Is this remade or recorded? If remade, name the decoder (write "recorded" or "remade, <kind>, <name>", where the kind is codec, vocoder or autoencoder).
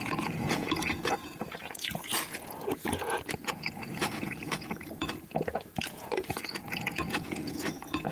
remade, vocoder, Vocos